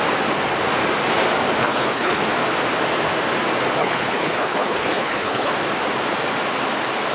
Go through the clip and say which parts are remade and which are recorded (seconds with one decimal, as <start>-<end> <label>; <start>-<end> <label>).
0.0-1.6 recorded; 1.6-2.2 remade; 2.2-3.8 recorded; 3.8-5.5 remade; 5.5-7.1 recorded